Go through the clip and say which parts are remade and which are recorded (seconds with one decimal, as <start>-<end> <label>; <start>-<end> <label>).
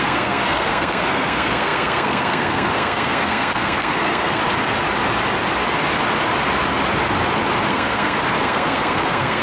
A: 0.0-4.4 remade; 4.4-7.7 recorded; 7.7-9.4 remade